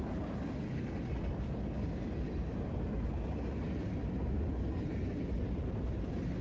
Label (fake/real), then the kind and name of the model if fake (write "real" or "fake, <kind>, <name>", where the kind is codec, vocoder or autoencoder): real